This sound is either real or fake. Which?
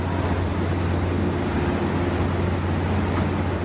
real